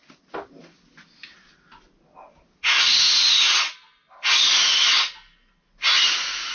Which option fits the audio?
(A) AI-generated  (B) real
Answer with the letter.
B